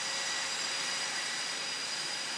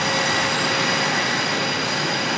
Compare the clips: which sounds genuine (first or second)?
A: second